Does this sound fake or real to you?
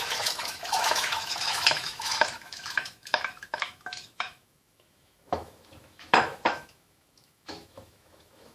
fake